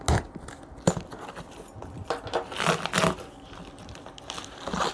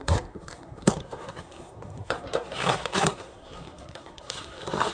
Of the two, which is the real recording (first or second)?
first